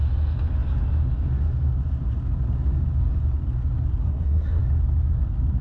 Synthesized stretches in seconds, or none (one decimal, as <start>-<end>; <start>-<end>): 4.0-4.6